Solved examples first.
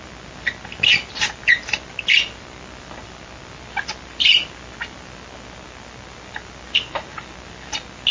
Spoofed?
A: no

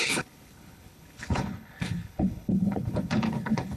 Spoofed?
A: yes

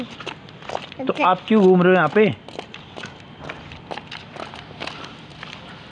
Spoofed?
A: no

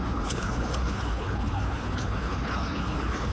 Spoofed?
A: yes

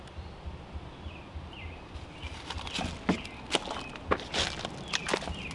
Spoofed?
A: no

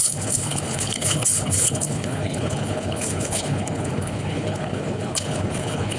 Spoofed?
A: yes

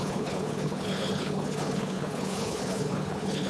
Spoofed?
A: yes